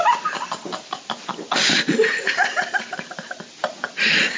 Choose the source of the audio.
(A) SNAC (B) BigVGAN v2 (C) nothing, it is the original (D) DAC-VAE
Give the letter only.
C